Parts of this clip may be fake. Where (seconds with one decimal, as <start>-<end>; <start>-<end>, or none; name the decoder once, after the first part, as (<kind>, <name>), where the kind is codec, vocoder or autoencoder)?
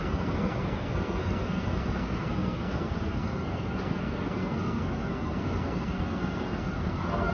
0.0-7.3 (codec, SNAC)